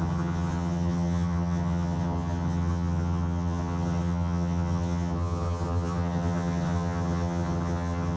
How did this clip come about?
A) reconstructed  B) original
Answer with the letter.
A